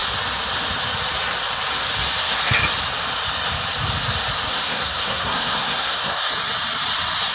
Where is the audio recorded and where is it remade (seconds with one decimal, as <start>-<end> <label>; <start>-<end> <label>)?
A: 0.0-2.2 recorded; 2.2-2.6 remade; 2.6-4.5 recorded; 4.5-6.3 remade; 6.3-7.3 recorded